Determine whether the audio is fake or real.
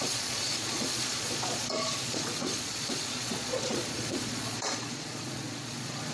fake